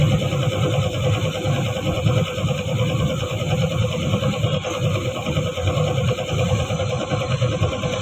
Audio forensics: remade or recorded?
recorded